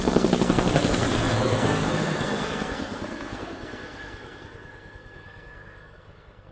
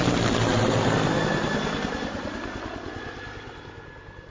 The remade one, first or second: first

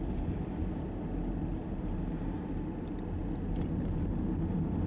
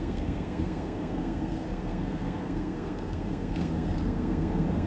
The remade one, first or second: second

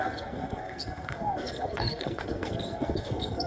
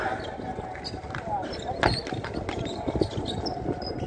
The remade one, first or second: first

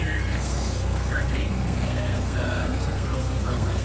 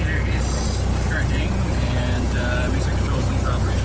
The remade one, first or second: first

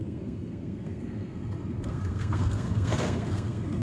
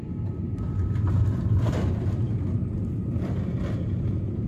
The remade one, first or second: first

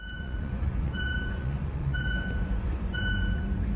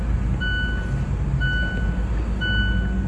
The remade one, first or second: first